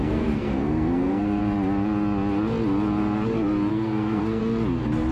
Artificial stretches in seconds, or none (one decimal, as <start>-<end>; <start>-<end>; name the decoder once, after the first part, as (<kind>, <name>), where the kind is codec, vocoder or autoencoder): 0.0-1.4 (codec, SNAC); 3.7-4.4

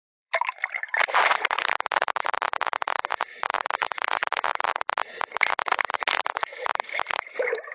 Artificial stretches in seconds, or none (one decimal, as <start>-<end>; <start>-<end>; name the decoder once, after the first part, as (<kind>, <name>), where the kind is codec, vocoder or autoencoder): 0.0-7.7 (vocoder, BigVGAN v2)

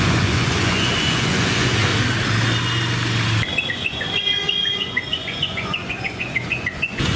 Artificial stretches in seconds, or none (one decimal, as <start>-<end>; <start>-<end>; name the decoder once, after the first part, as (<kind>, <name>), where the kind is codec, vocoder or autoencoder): 0.0-1.9 (vocoder, Vocos); 3.7-7.2